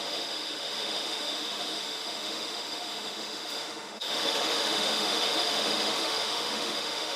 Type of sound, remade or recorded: remade